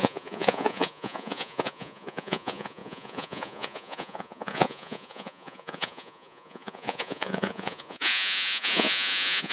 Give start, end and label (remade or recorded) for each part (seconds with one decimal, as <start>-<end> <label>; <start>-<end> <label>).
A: 0.0-9.5 remade